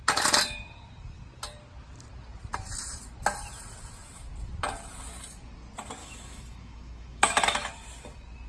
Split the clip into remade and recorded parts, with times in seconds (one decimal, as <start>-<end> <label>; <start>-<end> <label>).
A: 0.0-6.0 recorded; 6.0-7.7 remade; 7.7-8.5 recorded